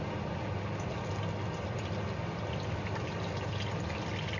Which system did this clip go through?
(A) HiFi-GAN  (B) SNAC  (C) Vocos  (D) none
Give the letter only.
D